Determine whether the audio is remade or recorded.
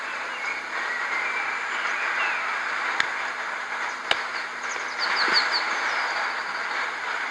recorded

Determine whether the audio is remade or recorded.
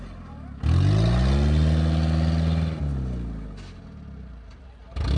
recorded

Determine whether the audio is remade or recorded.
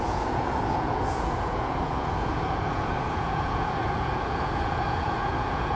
remade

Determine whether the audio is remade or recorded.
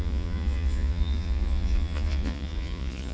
remade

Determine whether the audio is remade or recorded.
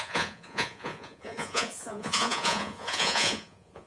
remade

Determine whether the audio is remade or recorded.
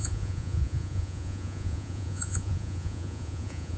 remade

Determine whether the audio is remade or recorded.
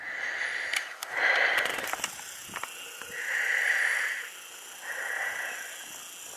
recorded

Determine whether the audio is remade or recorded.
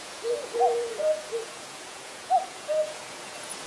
remade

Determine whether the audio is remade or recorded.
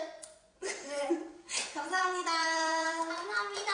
remade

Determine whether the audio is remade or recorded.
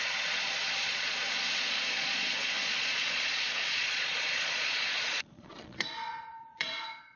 remade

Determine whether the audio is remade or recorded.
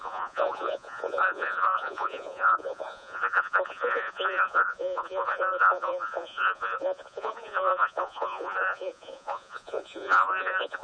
remade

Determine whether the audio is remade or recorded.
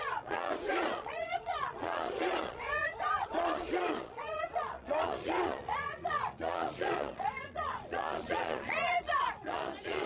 remade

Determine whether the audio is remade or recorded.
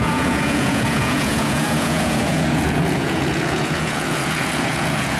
remade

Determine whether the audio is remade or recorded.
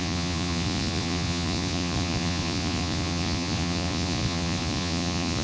remade